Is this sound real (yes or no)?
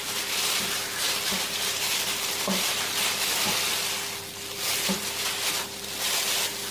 yes